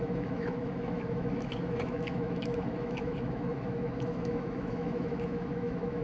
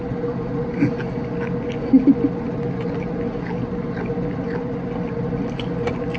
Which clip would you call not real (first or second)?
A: first